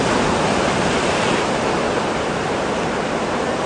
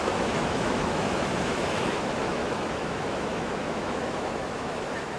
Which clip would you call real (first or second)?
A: first